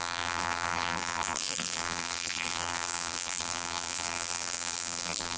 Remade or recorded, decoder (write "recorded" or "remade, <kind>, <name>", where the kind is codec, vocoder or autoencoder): remade, vocoder, BigVGAN v2